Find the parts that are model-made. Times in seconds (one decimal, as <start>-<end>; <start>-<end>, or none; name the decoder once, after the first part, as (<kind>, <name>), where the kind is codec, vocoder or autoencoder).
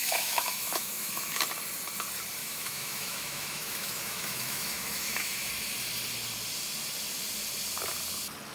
0.0-1.4 (autoencoder, DAC-VAE); 2.4-5.5